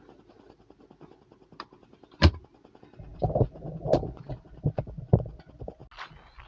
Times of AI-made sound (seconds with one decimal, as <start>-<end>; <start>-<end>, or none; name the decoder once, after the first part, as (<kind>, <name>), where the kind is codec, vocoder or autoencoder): none